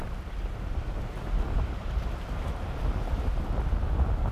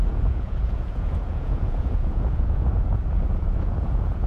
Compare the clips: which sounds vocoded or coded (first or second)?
second